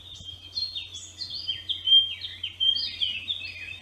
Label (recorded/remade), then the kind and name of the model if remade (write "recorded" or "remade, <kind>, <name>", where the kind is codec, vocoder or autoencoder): recorded